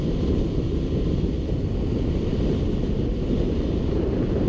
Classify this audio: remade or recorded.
recorded